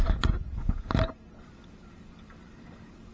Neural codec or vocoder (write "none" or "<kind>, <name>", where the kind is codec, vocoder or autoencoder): vocoder, BigVGAN v2